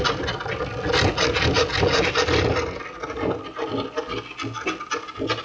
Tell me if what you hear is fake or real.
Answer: real